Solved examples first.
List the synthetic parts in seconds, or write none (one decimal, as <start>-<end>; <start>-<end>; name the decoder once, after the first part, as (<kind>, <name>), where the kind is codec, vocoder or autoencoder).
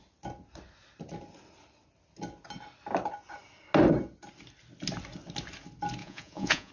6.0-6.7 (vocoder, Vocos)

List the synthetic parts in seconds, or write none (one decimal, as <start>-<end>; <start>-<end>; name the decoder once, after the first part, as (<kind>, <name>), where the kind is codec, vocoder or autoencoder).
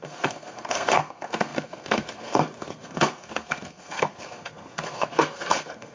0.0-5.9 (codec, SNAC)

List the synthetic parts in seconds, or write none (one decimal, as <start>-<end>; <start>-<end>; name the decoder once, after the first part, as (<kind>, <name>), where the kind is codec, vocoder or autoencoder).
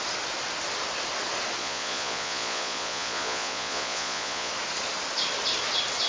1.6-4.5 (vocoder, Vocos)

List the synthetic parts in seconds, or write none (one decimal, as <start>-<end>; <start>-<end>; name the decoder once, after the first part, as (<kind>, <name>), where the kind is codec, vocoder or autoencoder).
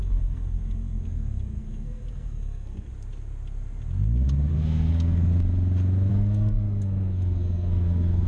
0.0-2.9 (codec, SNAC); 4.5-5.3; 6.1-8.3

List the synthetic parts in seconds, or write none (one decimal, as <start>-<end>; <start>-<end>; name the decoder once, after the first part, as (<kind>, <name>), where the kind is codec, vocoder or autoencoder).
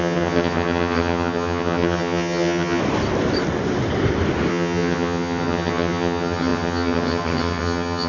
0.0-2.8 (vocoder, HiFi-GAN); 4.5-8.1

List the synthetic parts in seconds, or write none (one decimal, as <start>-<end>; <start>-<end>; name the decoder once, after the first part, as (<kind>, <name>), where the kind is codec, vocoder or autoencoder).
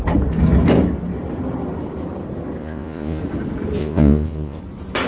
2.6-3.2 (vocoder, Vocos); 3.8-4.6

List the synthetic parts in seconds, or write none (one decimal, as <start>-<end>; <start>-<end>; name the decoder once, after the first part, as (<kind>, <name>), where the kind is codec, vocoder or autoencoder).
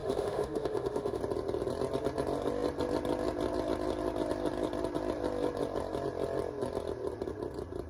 0.0-1.2 (autoencoder, DAC-VAE)